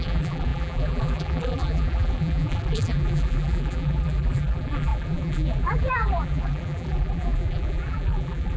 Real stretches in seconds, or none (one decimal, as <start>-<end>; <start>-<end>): none